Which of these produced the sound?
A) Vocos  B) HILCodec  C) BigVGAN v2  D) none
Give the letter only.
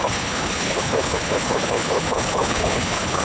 B